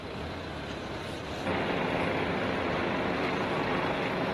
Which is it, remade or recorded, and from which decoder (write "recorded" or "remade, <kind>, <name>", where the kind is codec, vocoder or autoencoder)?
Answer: recorded